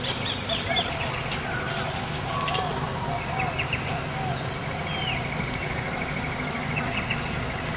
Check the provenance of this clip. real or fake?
real